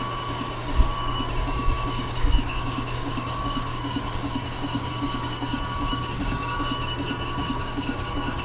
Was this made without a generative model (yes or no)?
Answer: no